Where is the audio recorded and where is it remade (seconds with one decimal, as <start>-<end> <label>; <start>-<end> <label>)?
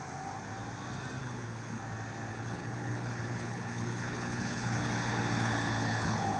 0.0-1.2 recorded; 1.2-1.8 remade; 1.8-2.3 recorded; 2.3-6.4 remade